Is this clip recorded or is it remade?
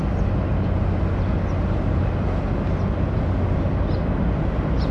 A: recorded